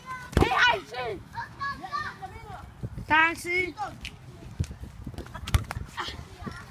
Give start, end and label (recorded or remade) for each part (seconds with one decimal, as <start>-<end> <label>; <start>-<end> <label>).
0.0-1.1 recorded; 1.1-2.3 remade; 2.3-6.7 recorded